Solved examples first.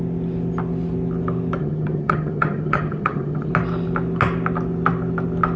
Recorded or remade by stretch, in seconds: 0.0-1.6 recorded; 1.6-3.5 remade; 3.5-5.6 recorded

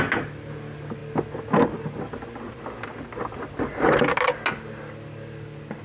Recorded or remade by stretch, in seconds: 0.0-5.8 recorded

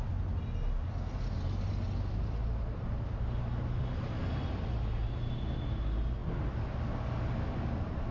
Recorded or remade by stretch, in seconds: 0.0-8.1 recorded